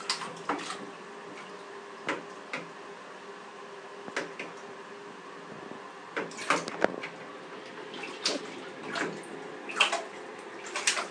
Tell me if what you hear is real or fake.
real